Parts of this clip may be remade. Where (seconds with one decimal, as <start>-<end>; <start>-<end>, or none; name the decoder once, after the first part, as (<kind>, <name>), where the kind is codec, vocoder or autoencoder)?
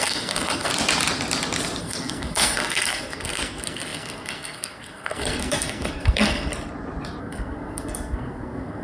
0.0-0.7 (codec, SNAC); 1.8-6.5; 7.2-8.8